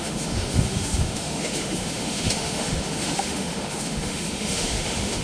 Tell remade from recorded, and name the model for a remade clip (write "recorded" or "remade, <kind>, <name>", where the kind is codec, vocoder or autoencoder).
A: remade, autoencoder, DAC-VAE